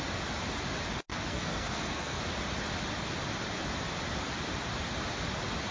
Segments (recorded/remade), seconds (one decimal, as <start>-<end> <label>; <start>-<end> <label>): 0.0-1.1 recorded; 1.1-2.2 remade; 2.2-5.7 recorded